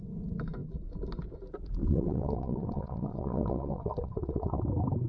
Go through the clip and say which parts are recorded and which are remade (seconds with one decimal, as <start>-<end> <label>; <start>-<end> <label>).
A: 0.0-1.8 recorded; 1.8-4.6 remade; 4.6-5.1 recorded